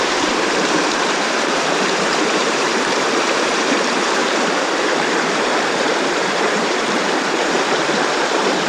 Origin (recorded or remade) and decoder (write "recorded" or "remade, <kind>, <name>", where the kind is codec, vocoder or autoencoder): remade, vocoder, BigVGAN v2